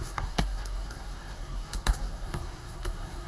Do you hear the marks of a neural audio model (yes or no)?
yes